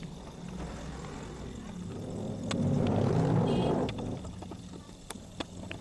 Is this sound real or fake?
real